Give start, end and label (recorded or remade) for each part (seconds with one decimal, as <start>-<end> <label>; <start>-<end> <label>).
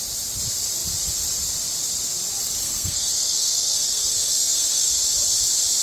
0.0-2.6 recorded; 2.6-4.9 remade; 4.9-5.8 recorded